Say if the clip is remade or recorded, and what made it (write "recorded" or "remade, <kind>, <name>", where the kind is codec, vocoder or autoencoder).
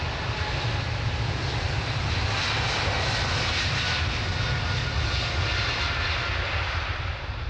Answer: recorded